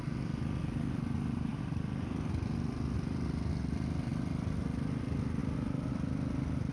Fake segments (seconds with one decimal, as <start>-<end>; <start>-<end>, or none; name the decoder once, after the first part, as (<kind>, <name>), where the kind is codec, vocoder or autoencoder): 5.4-5.9 (vocoder, BigVGAN v2)